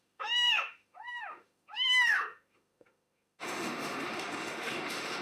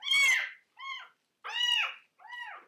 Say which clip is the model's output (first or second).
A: first